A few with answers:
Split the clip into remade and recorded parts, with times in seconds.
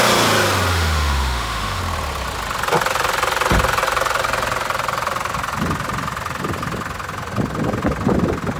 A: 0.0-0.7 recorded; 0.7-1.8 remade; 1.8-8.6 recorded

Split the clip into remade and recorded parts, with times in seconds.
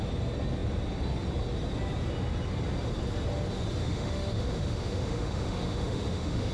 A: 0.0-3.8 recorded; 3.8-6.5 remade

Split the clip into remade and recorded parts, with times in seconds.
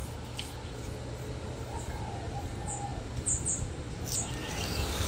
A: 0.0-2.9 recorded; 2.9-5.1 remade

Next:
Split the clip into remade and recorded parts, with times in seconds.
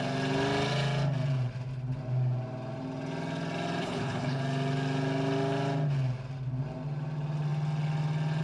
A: 0.0-3.8 recorded; 3.8-4.4 remade; 4.4-8.4 recorded